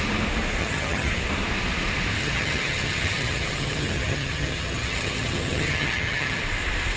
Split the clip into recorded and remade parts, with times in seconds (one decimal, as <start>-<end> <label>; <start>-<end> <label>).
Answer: 0.0-0.6 recorded; 0.6-1.1 remade; 1.1-2.2 recorded; 2.2-6.4 remade; 6.4-7.0 recorded

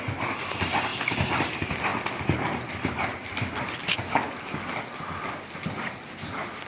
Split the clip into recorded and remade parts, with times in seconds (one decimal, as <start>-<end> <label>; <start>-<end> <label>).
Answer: 0.0-6.7 recorded

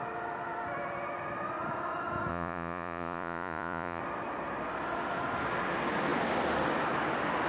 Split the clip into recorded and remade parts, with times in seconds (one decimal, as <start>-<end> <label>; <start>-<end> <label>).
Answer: 0.0-2.3 recorded; 2.3-4.0 remade; 4.0-7.5 recorded